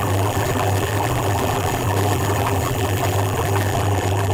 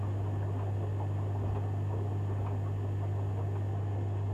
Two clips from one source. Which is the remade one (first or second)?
first